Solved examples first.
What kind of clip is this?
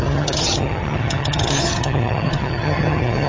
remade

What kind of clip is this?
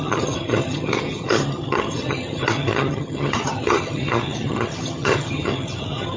remade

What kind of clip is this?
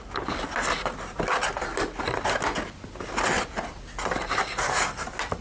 recorded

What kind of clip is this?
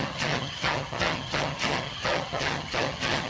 remade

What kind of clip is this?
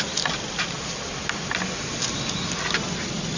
recorded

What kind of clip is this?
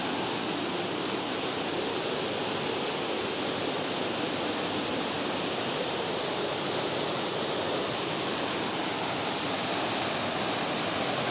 recorded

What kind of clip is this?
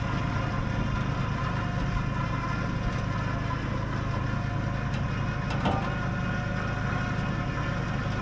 recorded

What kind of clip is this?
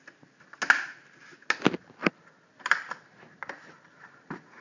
recorded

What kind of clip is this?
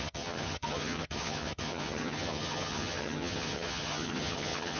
remade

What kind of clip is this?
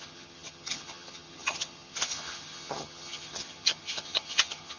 remade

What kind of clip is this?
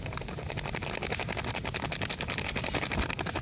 recorded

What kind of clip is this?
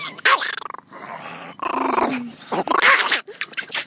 recorded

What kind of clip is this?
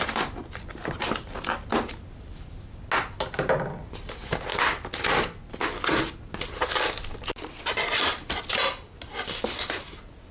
recorded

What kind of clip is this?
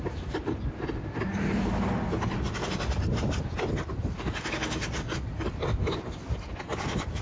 recorded